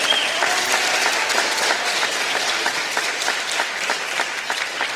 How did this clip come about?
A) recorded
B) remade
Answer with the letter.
B